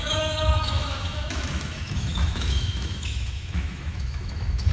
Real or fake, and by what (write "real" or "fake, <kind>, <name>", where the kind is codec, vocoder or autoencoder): fake, autoencoder, DAC-VAE